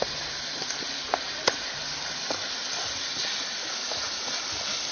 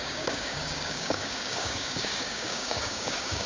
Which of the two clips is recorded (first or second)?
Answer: first